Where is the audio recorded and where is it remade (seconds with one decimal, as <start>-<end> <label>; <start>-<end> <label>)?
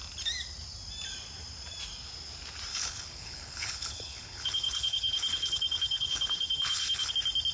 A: 0.0-2.7 recorded; 2.7-7.1 remade; 7.1-7.5 recorded